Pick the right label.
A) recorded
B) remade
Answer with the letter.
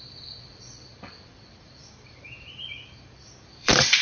B